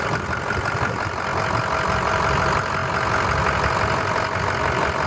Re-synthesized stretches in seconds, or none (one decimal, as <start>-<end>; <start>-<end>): none